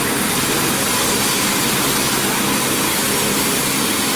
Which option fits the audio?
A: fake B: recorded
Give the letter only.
B